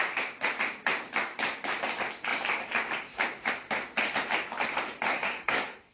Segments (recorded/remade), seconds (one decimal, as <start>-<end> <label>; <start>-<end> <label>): 0.0-5.1 recorded; 5.1-5.9 remade